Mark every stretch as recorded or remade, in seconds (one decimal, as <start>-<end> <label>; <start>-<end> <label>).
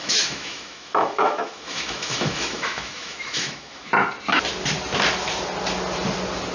0.0-3.9 remade; 3.9-6.5 recorded